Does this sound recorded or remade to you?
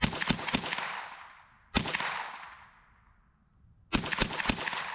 recorded